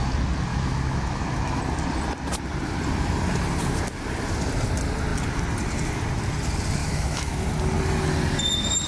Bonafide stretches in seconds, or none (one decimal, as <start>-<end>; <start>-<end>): 0.0-0.5; 1.6-6.8; 7.4-8.9